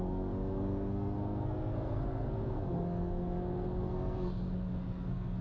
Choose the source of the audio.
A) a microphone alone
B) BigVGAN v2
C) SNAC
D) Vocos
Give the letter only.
C